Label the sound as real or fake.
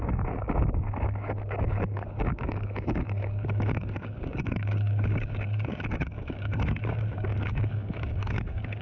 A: fake